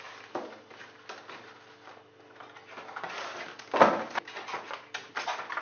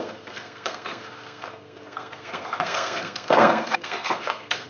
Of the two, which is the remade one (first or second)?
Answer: second